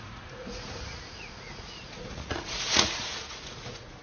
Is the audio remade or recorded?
remade